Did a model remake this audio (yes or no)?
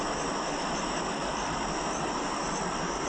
no